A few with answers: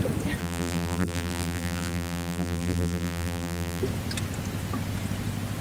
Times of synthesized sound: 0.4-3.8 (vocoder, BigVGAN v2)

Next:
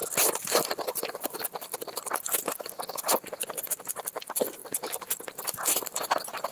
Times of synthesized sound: 0.0-1.8 (vocoder, BigVGAN v2); 4.6-5.2

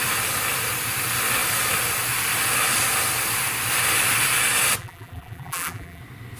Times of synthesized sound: 4.8-6.0 (vocoder, BigVGAN v2)

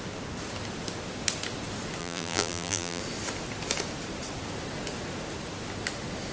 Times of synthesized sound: 2.0-3.0 (vocoder, BigVGAN v2)

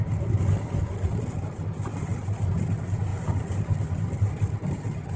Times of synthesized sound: 1.9-2.5 (vocoder, BigVGAN v2)

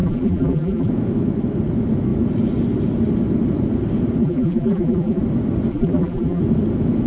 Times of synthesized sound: 0.0-0.9 (vocoder, BigVGAN v2); 4.2-5.2; 5.7-6.4

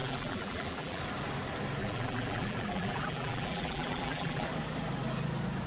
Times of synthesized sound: 0.0-1.0 (vocoder, BigVGAN v2); 1.8-4.5